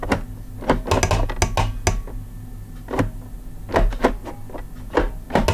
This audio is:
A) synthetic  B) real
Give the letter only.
B